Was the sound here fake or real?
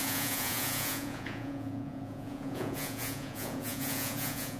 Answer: fake